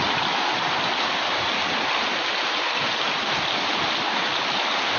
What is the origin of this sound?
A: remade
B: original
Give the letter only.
B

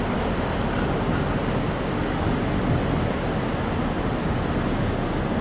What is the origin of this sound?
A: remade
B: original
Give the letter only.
B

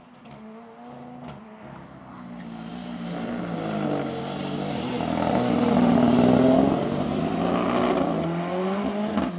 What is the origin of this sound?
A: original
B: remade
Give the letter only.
A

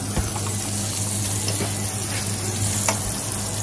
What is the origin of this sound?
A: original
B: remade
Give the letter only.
A